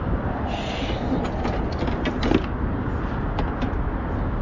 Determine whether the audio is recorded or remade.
recorded